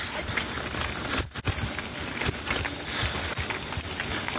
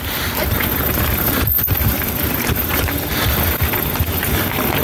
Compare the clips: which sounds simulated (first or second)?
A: second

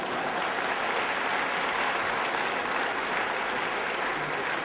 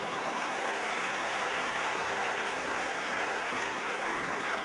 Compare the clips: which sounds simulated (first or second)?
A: second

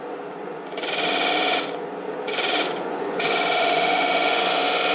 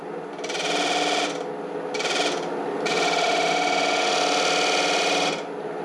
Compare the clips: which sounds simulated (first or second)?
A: first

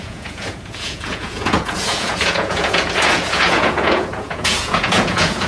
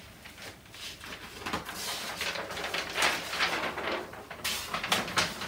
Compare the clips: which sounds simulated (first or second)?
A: first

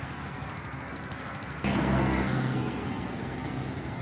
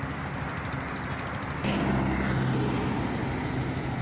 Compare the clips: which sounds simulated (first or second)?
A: first